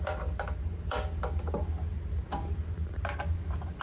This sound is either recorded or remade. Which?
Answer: recorded